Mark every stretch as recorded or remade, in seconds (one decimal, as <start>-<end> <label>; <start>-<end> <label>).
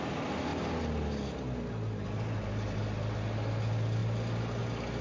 0.0-5.0 recorded